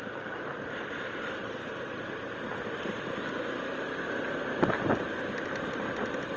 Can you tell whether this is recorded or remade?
recorded